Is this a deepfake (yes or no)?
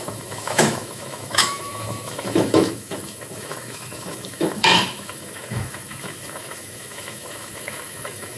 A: yes